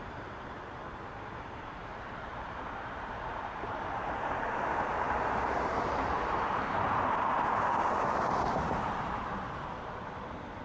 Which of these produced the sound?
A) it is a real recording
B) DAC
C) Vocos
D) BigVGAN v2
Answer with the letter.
D